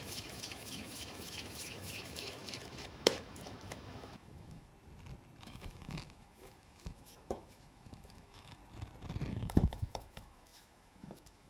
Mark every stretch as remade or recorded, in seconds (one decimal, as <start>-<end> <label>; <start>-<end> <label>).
0.0-4.7 remade; 4.7-5.4 recorded; 5.4-8.6 remade; 8.6-9.3 recorded; 9.3-11.5 remade